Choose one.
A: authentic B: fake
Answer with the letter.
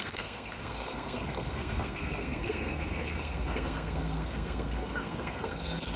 B